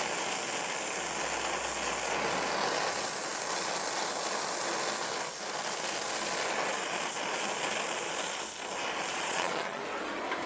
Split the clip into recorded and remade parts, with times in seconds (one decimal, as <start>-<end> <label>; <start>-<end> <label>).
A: 0.0-9.1 recorded; 9.1-9.8 remade; 9.8-10.5 recorded